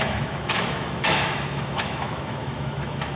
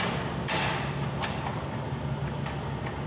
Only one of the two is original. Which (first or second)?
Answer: second